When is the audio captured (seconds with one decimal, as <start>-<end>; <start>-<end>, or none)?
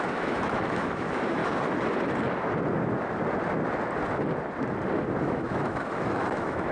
1.4-5.2